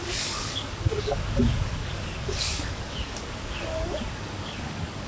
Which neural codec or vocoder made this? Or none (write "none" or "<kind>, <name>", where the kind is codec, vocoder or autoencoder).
codec, DAC